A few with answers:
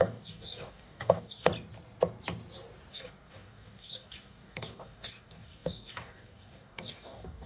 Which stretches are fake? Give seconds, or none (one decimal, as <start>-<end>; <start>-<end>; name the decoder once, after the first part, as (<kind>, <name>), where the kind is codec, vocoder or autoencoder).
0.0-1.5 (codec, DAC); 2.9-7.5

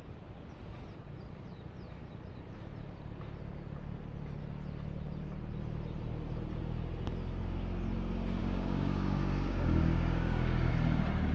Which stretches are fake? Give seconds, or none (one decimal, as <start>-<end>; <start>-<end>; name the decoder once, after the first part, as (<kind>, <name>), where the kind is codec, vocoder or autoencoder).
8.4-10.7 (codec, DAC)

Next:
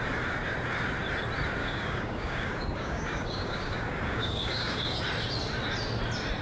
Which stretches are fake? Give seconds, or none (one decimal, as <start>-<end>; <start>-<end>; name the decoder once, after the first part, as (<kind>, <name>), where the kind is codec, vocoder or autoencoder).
1.6-5.0 (codec, DAC)